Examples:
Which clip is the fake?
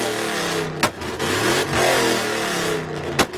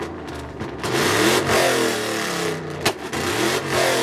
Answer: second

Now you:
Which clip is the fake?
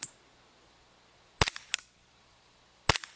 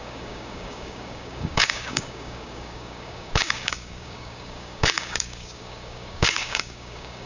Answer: second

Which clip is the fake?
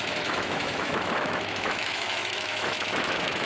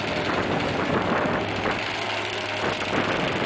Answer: first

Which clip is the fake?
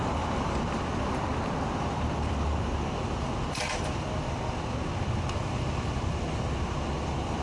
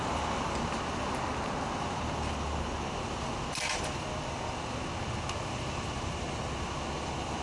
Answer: first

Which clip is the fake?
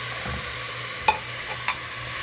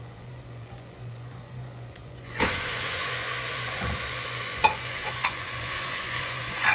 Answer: second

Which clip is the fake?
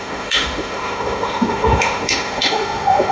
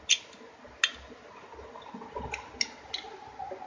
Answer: first